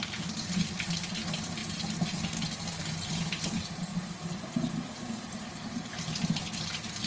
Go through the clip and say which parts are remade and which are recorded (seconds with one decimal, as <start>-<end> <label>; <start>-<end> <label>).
0.0-7.1 recorded